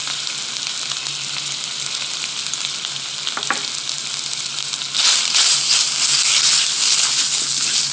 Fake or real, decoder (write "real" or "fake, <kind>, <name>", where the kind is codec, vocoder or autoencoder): real